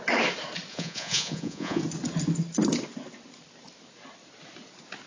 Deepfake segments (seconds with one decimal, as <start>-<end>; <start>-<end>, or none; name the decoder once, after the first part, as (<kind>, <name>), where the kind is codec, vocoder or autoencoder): 0.7-1.8 (vocoder, Vocos)